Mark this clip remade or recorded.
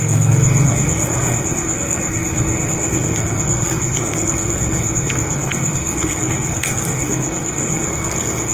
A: remade